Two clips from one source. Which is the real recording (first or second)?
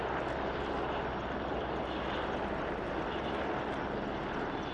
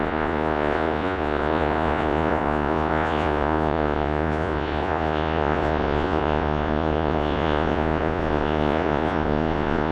first